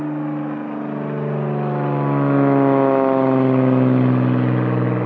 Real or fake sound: real